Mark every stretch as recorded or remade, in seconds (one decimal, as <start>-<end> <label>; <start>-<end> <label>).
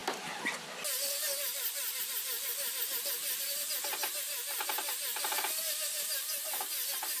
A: 0.0-7.2 recorded